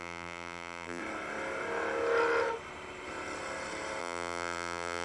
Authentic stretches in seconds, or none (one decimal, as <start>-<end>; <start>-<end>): 1.0-4.0